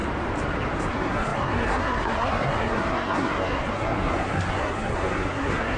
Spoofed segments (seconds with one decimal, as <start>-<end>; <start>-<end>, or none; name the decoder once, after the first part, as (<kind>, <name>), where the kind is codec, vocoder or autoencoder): 0.9-5.8 (codec, SNAC)